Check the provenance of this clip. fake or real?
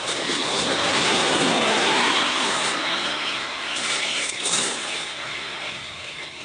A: fake